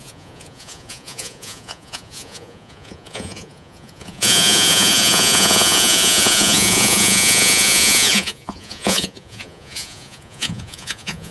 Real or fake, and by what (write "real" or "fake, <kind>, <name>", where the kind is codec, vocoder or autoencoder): fake, vocoder, Vocos